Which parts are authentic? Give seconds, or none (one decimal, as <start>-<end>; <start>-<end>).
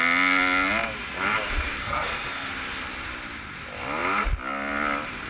0.0-1.8; 2.5-5.3